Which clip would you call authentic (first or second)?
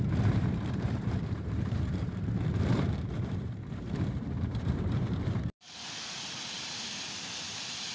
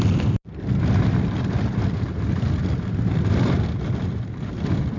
second